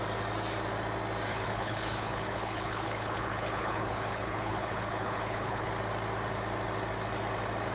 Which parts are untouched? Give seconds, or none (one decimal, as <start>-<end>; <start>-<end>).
0.0-1.3; 5.7-7.7